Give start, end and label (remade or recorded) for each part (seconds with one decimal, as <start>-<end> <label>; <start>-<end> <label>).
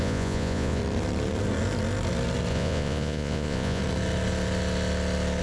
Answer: 0.0-0.8 remade; 0.8-2.5 recorded; 2.5-3.8 remade; 3.8-5.4 recorded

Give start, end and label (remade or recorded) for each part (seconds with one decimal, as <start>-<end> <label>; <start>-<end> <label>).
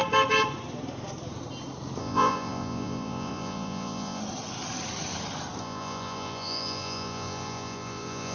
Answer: 0.0-2.0 recorded; 2.0-4.2 remade; 4.2-5.6 recorded; 5.6-8.3 remade